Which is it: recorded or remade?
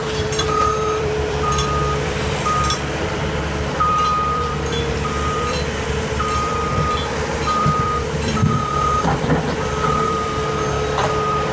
remade